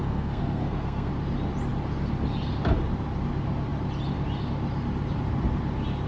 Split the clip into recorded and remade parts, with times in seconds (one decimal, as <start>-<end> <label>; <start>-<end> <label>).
0.0-1.1 remade; 1.1-6.1 recorded